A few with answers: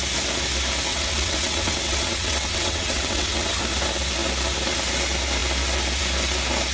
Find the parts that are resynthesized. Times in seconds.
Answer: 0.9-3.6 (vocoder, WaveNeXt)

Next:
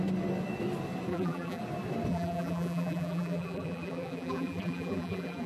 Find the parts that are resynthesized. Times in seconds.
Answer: 1.1-1.6 (vocoder, BigVGAN v2); 2.1-5.5